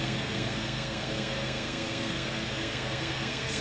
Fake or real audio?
fake